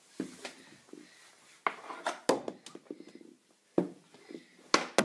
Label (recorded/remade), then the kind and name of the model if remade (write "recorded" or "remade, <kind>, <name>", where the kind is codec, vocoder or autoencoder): recorded